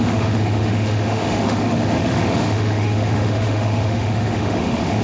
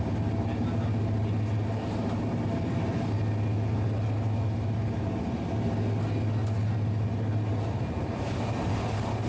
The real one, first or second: second